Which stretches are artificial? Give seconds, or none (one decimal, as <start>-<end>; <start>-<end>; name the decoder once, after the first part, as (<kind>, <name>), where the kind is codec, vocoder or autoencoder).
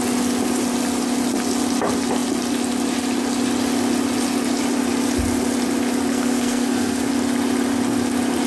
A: 6.1-7.1 (codec, SNAC)